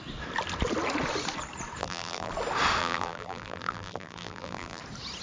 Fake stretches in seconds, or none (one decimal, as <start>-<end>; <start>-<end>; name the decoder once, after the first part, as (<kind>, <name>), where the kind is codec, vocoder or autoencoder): 1.8-2.3 (vocoder, BigVGAN v2); 2.8-4.8